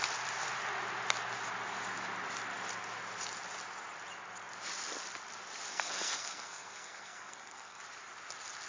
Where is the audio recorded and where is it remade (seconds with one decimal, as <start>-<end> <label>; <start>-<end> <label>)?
0.0-5.7 recorded; 5.7-7.8 remade; 7.8-8.7 recorded